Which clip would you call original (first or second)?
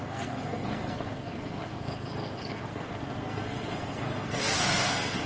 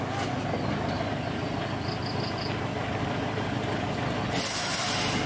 second